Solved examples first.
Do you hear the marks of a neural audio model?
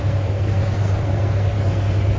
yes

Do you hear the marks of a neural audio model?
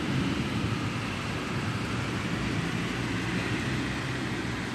no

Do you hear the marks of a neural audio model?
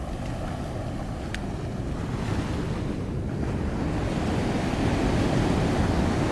no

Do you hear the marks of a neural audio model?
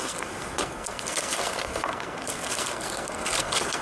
yes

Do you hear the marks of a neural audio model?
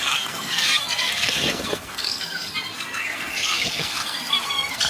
yes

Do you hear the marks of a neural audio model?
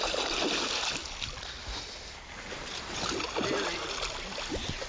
no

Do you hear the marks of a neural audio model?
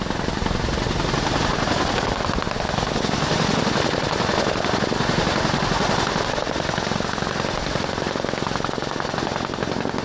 no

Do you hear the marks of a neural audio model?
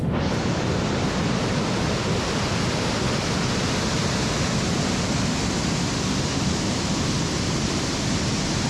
no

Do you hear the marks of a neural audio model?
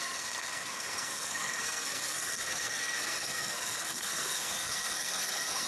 yes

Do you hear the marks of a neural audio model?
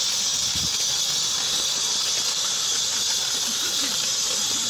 no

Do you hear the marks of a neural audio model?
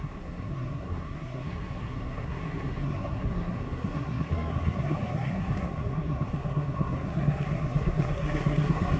yes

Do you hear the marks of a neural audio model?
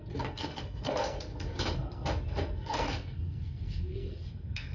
yes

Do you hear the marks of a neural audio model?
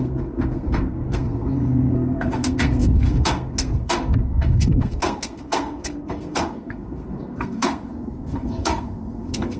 yes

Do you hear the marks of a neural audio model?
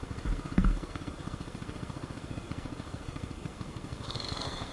yes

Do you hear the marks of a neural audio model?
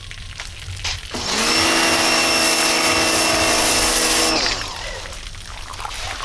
no